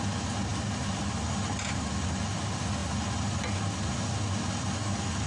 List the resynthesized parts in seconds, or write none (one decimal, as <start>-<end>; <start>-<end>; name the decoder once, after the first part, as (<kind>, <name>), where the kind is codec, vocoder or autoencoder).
none